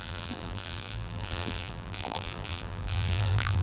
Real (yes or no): no